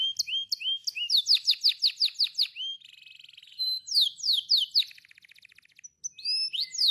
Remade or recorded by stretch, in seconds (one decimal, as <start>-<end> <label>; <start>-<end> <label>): 0.0-6.9 recorded